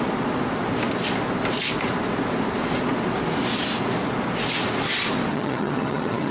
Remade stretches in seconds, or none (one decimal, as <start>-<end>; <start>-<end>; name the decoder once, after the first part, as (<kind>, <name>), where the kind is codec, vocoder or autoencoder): 5.3-6.3 (vocoder, HiFi-GAN)